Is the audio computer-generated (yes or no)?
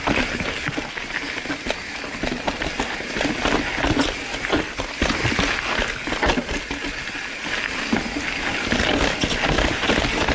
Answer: no